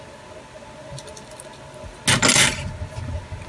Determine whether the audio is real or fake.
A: real